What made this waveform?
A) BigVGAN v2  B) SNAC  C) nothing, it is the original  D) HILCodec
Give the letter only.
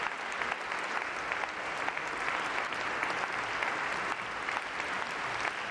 C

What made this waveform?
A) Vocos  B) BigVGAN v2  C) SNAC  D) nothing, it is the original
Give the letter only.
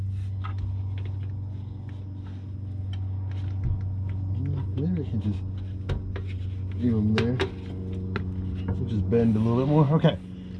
D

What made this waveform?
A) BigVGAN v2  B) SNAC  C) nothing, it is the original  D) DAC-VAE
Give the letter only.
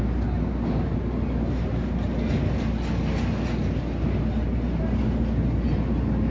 C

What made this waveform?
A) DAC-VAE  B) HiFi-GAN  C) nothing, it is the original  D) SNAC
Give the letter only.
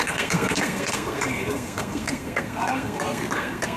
D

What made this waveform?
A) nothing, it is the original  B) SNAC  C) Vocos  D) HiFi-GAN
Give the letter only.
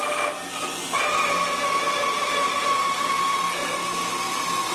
A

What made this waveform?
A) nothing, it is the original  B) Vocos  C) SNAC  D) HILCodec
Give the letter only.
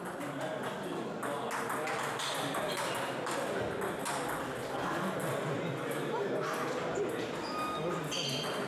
A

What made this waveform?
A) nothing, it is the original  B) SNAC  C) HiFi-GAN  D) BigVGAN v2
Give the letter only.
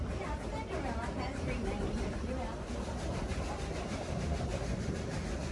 A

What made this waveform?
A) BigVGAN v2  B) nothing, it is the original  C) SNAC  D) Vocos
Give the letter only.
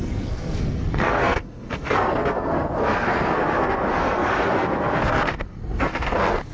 C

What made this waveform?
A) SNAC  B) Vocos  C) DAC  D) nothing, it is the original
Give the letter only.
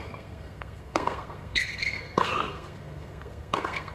A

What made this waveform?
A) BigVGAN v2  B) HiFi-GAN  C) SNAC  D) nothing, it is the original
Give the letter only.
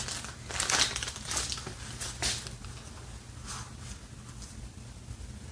D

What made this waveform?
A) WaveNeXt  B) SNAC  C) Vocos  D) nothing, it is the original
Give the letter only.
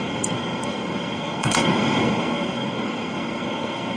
B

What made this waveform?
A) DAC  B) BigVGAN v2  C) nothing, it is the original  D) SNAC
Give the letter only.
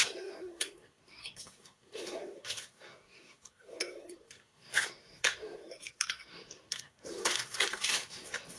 D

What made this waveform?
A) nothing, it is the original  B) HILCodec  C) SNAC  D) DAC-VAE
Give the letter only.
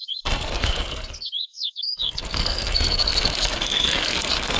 C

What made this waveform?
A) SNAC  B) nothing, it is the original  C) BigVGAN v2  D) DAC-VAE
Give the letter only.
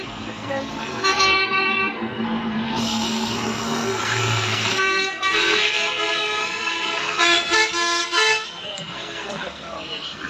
A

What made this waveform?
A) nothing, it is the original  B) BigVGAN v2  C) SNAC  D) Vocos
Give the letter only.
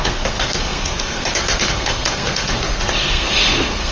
C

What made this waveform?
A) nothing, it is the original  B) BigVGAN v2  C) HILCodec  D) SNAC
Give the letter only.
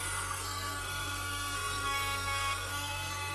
D